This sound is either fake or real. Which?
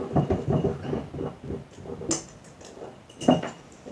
real